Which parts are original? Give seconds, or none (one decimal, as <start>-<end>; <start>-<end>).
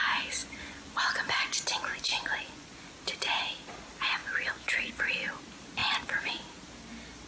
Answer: 0.0-0.4; 1.3-1.9; 2.9-4.2; 4.9-7.3